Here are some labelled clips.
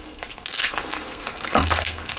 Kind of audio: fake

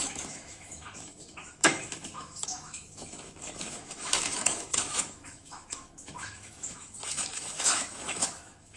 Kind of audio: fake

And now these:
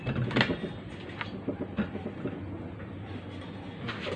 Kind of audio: real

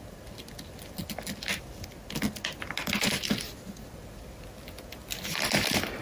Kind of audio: real